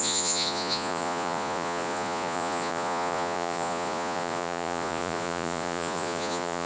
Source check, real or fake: fake